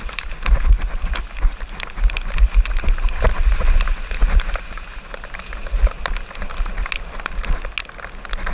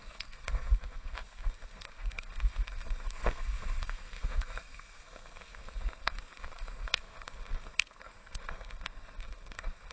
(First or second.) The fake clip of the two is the second